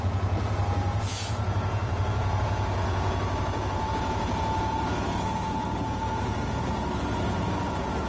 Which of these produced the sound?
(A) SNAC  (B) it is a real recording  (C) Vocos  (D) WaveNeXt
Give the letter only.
C